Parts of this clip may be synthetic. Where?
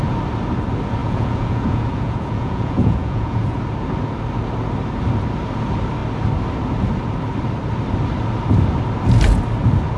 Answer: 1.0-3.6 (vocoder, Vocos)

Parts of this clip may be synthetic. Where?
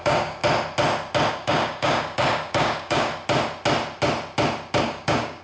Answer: 0.0-0.4 (codec, DAC); 1.3-3.1; 4.8-5.4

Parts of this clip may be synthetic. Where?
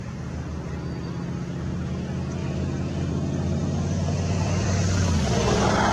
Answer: 2.4-3.1 (vocoder, BigVGAN v2); 3.6-4.9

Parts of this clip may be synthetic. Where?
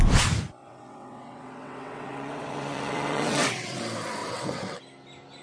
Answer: 0.6-3.8 (vocoder, WaveNeXt); 4.2-4.8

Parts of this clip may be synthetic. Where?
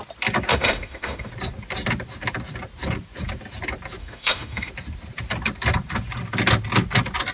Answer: 0.5-1.3 (autoencoder, DAC-VAE); 4.0-4.7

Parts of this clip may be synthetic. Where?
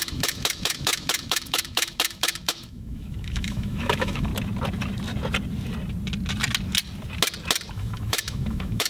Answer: 0.0-4.3 (autoencoder, DAC-VAE); 7.7-8.9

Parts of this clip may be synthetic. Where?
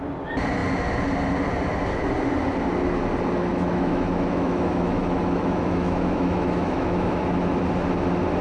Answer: 3.5-7.2 (autoencoder, DAC-VAE)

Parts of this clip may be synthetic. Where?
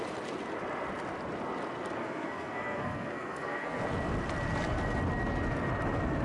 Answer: 2.0-3.8 (codec, SNAC)